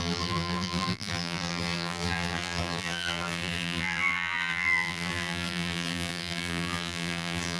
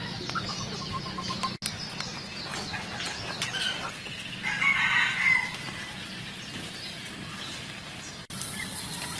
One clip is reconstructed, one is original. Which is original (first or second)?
second